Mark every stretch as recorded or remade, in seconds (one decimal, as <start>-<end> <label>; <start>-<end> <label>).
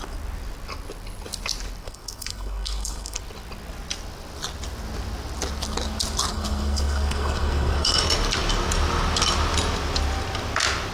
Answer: 0.0-1.8 recorded; 1.8-3.2 remade; 3.2-6.3 recorded; 6.3-8.0 remade; 8.0-10.9 recorded